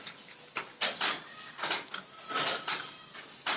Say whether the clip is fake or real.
real